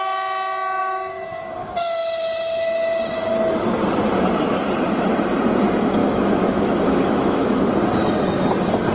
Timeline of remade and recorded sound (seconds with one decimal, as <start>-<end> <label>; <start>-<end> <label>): 0.0-0.8 recorded; 0.8-1.5 remade; 1.5-6.0 recorded; 6.0-7.7 remade; 7.7-8.9 recorded